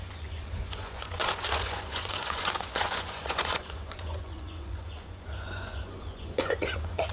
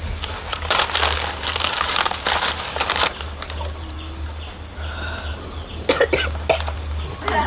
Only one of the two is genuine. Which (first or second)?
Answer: second